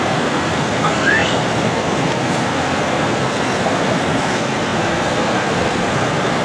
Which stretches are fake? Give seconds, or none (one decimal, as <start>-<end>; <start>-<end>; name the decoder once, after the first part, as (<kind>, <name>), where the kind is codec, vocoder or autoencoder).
0.0-6.4 (codec, SNAC)